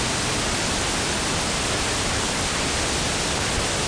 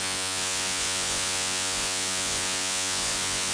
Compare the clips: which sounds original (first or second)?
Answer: first